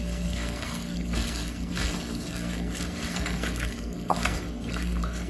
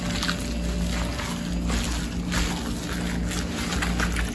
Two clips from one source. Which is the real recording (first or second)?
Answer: second